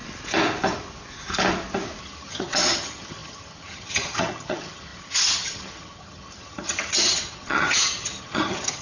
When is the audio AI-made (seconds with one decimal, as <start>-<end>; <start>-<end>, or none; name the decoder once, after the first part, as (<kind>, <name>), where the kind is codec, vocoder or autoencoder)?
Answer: 2.0-8.8 (vocoder, HiFi-GAN)

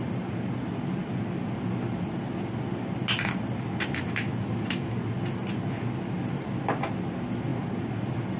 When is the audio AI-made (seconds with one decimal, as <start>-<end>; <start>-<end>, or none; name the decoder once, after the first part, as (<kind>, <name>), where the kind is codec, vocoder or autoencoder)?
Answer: none

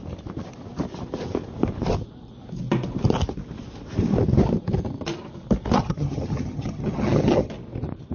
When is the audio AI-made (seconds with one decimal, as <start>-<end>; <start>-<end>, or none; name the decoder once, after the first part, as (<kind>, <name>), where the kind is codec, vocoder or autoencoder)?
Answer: 5.8-7.5 (vocoder, HiFi-GAN)

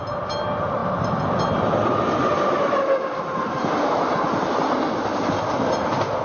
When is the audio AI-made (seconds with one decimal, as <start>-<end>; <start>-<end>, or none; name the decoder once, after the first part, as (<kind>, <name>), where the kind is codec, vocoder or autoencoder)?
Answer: none

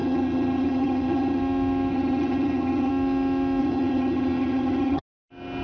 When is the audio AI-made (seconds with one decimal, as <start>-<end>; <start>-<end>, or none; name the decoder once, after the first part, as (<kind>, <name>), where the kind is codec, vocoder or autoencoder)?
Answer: 0.0-1.4 (vocoder, HiFi-GAN); 1.9-2.9; 3.6-5.0

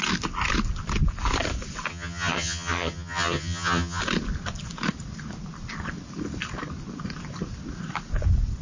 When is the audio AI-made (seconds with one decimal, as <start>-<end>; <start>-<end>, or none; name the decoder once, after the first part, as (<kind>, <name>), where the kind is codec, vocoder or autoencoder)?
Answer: 1.9-4.0 (vocoder, HiFi-GAN)

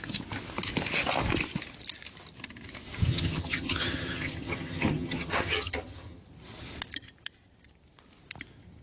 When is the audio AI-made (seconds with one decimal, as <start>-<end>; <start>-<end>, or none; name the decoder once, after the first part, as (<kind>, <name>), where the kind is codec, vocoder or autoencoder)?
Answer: 3.1-6.2 (vocoder, HiFi-GAN)